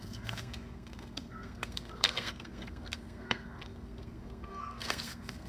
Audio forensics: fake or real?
fake